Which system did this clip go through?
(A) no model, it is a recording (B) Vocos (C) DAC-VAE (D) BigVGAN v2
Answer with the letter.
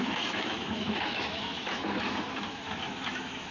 C